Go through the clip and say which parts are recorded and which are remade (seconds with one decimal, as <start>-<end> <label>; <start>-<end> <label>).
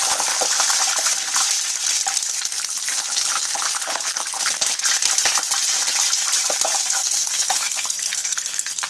0.0-7.0 recorded; 7.0-8.9 remade